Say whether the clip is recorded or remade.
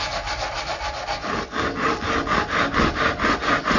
recorded